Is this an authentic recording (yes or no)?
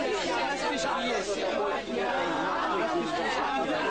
yes